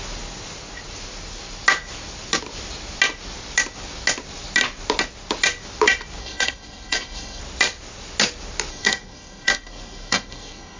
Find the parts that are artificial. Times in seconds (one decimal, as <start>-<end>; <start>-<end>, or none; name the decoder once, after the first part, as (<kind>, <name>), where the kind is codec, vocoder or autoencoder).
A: 6.2-7.4 (codec, SNAC); 8.7-10.8